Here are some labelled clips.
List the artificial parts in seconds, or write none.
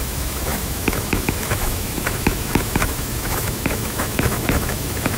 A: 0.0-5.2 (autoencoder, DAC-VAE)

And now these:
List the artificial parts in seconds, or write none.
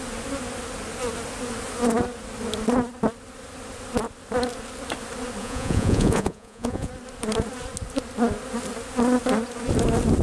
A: 5.4-6.9 (vocoder, Vocos)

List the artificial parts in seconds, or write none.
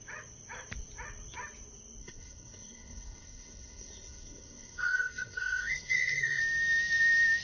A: 2.0-6.4 (codec, SNAC)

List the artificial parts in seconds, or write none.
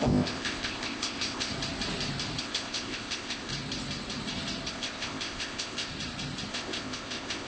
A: 0.0-1.5 (codec, ZipCodec); 2.4-3.5; 4.7-5.9; 6.5-7.5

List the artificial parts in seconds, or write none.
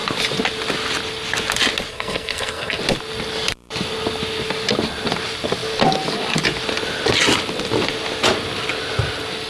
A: 1.9-2.8 (codec, SNAC)